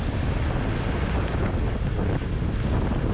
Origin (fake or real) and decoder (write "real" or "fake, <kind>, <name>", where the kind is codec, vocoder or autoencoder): real